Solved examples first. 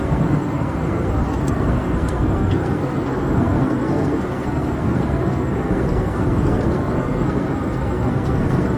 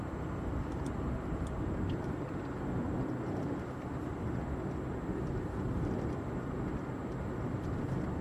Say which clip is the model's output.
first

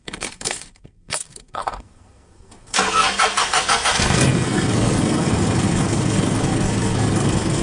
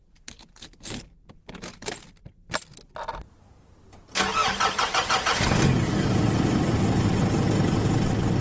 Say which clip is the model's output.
first